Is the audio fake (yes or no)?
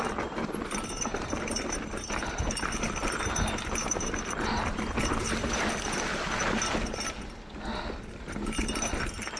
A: no